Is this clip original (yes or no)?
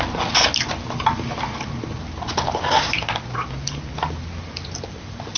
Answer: yes